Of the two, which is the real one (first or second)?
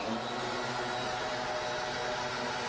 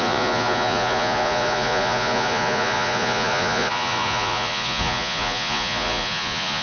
first